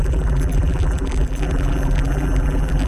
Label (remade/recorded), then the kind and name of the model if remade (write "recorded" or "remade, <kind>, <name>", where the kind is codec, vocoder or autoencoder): remade, vocoder, BigVGAN v2